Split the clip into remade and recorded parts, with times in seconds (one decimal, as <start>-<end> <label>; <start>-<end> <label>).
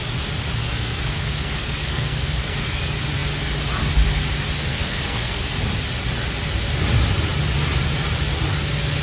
0.0-0.6 recorded; 0.6-2.8 remade; 2.8-4.7 recorded; 4.7-5.4 remade; 5.4-9.0 recorded